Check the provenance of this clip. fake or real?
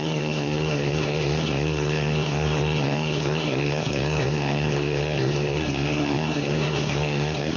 fake